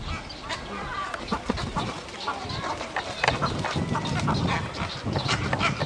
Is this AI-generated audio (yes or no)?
no